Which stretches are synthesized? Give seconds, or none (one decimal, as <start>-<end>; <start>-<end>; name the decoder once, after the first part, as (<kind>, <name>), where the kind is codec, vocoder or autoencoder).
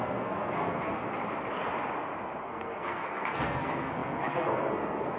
0.0-1.0 (codec, SNAC); 2.4-5.2